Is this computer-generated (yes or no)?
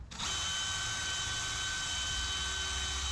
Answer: no